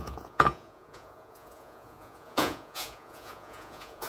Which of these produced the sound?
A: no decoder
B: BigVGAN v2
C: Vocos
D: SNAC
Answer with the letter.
C